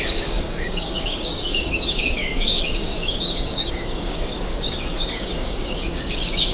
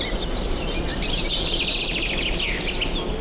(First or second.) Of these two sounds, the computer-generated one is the first